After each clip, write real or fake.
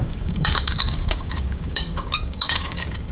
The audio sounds fake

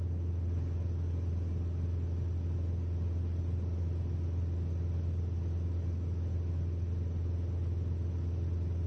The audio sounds real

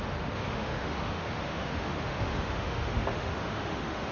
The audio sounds fake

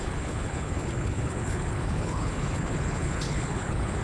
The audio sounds fake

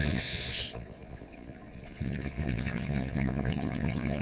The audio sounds fake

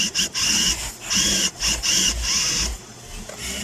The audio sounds real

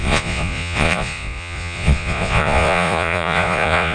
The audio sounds fake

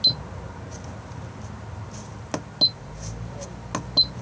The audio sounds real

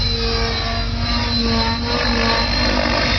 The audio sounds real